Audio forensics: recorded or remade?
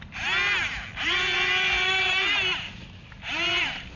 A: recorded